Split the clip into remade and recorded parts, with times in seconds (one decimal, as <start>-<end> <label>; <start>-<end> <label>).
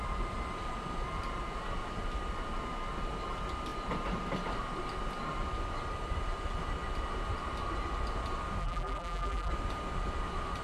0.0-8.6 recorded; 8.6-9.5 remade; 9.5-10.6 recorded